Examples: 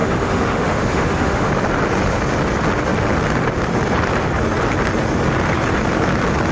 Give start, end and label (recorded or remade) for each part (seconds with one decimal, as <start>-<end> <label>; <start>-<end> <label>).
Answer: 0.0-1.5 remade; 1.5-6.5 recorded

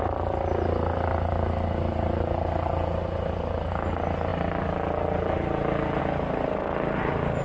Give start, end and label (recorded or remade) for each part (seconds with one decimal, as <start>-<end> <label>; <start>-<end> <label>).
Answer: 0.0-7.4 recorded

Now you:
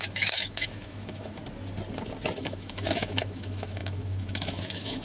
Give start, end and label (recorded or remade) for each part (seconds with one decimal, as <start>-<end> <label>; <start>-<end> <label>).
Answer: 0.0-1.4 remade; 1.4-2.4 recorded; 2.4-5.0 remade